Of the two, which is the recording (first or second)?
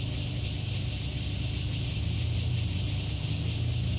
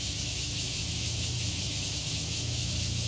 first